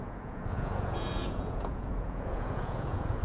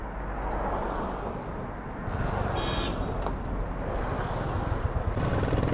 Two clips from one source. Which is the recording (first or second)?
second